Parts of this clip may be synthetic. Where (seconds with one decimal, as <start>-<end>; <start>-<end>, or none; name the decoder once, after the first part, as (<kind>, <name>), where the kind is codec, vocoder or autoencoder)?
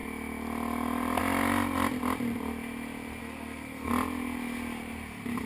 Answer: 3.2-3.9 (codec, SNAC)